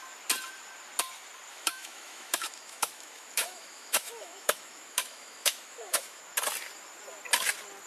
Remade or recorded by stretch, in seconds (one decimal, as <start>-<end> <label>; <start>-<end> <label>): 0.0-1.5 recorded; 1.5-6.2 remade; 6.2-7.9 recorded